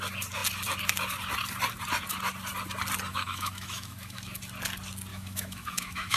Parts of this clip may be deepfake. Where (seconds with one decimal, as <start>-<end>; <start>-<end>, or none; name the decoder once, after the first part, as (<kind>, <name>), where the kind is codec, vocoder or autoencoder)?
3.1-4.4 (autoencoder, DAC-VAE); 5.1-6.2